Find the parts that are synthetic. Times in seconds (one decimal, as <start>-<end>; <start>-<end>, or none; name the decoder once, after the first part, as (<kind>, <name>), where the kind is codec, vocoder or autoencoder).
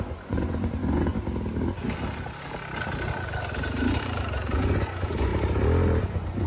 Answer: 0.0-1.1 (vocoder, Vocos); 4.5-5.3; 6.0-6.5